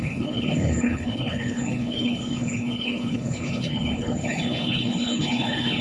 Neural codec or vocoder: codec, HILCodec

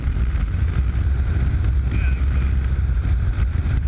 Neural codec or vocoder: none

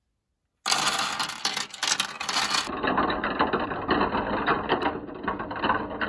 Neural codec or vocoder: none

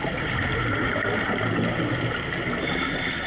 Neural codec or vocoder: none